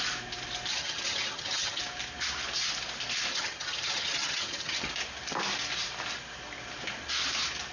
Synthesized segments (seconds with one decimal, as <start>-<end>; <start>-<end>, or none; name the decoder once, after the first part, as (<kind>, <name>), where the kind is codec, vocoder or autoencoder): 0.7-1.8 (vocoder, HiFi-GAN); 3.3-4.9